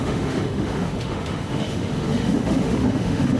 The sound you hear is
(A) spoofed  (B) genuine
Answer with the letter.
A